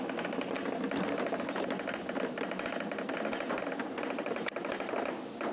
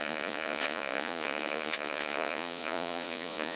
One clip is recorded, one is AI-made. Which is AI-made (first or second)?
second